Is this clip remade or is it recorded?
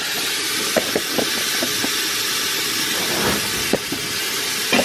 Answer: recorded